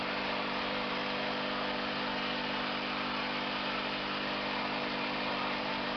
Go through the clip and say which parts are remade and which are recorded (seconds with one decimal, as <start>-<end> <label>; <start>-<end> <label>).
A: 0.0-1.0 remade; 1.0-4.6 recorded; 4.6-6.0 remade